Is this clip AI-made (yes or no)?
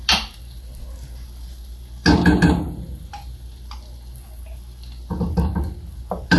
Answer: no